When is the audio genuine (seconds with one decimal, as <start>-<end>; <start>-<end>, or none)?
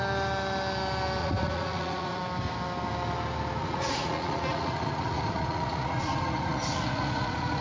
0.0-1.2; 2.2-3.6